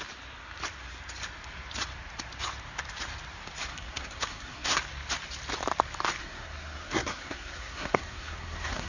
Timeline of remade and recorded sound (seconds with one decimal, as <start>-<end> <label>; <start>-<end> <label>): 0.0-3.7 recorded; 3.7-4.8 remade; 4.8-6.2 recorded; 6.2-8.9 remade